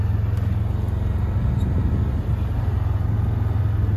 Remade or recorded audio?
recorded